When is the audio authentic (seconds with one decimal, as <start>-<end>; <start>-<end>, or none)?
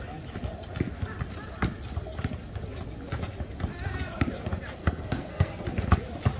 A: 0.0-4.8; 5.5-6.4